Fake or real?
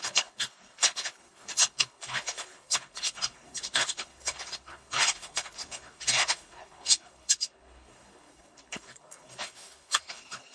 fake